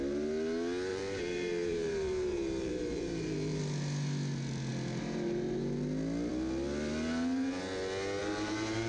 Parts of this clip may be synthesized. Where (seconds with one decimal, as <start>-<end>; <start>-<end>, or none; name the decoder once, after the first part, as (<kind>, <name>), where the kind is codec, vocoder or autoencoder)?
0.9-3.6 (vocoder, BigVGAN v2); 8.2-8.9